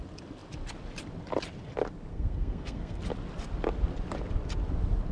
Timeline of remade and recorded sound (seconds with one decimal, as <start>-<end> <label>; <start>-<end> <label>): 0.0-2.1 recorded; 2.1-3.0 remade; 3.0-5.1 recorded

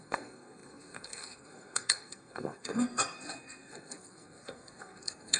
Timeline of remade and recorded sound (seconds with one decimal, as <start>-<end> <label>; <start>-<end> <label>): 0.0-5.4 remade

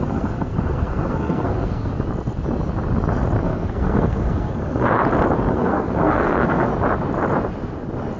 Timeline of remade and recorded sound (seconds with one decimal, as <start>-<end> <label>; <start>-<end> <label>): 0.0-1.9 remade; 1.9-3.4 recorded; 3.4-5.0 remade; 5.0-5.5 recorded; 5.5-6.7 remade; 6.7-8.2 recorded

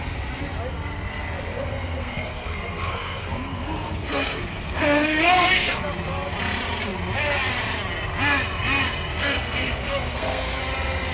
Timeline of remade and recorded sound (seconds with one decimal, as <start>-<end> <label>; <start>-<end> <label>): 0.0-1.5 recorded; 1.5-5.8 remade; 5.8-9.2 recorded; 9.2-10.6 remade; 10.6-11.1 recorded